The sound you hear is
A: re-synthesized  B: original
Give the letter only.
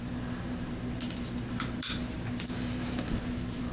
B